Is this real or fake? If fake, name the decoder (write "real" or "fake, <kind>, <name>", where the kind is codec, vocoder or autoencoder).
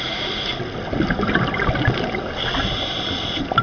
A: real